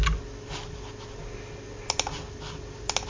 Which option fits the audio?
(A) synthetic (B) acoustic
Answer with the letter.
B